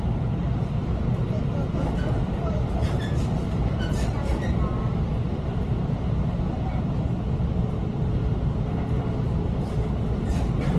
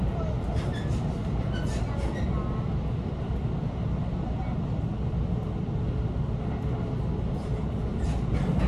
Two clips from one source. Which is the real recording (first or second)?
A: second